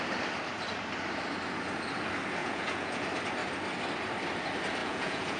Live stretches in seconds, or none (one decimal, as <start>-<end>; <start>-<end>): 0.0-2.4; 3.0-4.8